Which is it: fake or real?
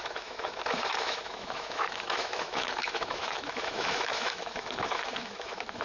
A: fake